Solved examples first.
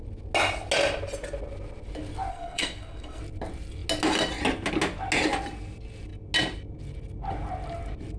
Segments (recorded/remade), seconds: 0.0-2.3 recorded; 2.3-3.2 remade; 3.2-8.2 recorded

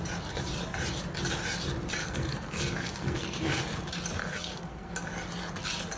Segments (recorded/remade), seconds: 0.0-2.0 recorded; 2.0-3.6 remade; 3.6-4.2 recorded; 4.2-4.9 remade; 4.9-6.0 recorded